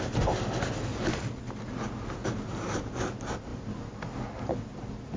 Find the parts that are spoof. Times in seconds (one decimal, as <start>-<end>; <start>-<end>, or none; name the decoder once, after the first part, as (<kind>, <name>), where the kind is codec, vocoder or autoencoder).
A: 2.2-2.8 (vocoder, BigVGAN v2)